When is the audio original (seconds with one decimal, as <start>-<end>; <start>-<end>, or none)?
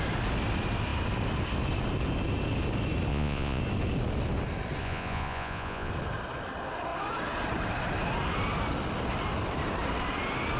0.0-3.1; 3.6-4.8; 5.9-10.6